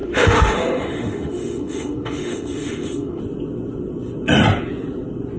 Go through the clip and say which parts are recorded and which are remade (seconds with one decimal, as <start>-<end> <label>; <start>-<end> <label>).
0.0-3.2 remade; 3.2-5.4 recorded